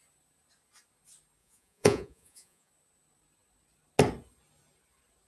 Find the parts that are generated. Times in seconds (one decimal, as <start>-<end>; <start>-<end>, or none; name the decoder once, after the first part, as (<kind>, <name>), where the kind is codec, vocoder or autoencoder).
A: 1.4-2.7 (vocoder, Vocos)